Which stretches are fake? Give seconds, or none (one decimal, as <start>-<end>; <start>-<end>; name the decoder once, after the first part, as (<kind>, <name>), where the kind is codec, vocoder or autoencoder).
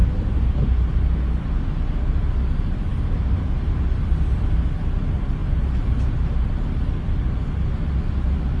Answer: 5.4-6.5 (vocoder, BigVGAN v2)